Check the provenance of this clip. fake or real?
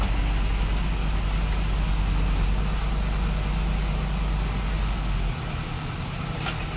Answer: real